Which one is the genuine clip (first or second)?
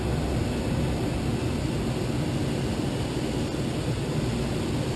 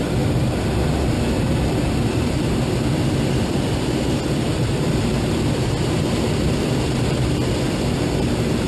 first